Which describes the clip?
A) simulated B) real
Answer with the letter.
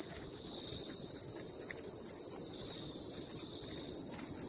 B